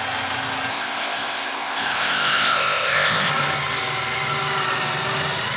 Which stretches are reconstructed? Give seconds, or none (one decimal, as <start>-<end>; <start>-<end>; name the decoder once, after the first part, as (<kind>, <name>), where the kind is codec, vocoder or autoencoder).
0.7-3.3 (codec, ZipCodec)